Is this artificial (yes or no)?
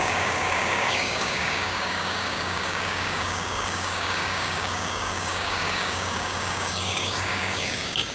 yes